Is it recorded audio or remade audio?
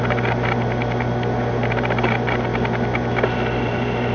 recorded